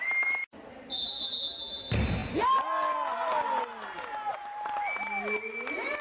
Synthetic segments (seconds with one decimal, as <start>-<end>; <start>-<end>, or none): none